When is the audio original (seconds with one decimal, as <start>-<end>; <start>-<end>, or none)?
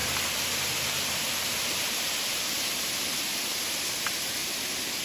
3.0-4.4